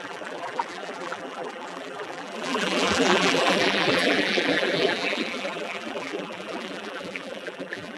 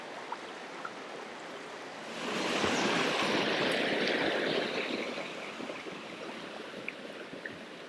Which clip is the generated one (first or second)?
first